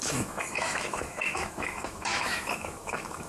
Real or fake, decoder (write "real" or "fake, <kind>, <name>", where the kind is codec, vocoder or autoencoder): fake, autoencoder, DAC-VAE